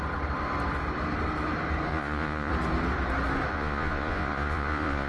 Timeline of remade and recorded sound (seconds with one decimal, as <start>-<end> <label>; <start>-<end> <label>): 0.0-1.9 recorded; 1.9-2.5 remade; 2.5-3.5 recorded; 3.5-5.1 remade